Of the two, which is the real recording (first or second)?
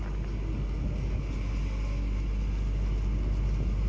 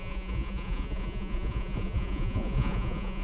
first